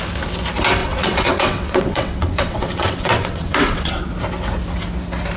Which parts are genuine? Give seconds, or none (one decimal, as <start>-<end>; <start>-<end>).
0.0-0.8; 4.0-5.4